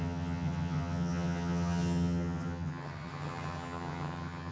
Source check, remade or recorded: remade